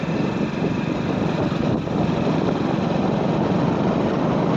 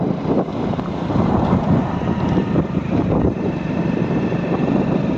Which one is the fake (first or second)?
second